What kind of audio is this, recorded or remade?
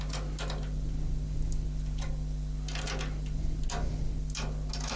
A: recorded